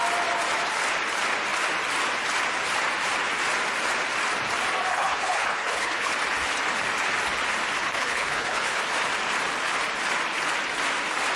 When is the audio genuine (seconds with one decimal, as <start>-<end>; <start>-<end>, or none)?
0.0-4.9; 6.1-7.8; 8.8-11.4